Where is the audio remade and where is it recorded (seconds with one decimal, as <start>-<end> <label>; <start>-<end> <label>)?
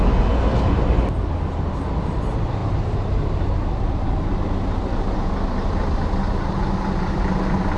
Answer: 0.0-7.8 recorded